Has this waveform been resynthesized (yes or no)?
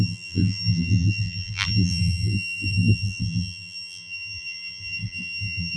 yes